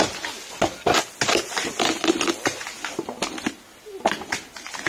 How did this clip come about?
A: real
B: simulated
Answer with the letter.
A